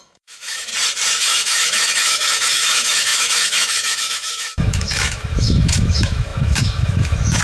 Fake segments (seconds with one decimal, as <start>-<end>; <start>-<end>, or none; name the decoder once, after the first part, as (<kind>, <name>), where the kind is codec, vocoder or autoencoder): 0.0-0.7 (autoencoder, DAC-VAE); 1.2-7.4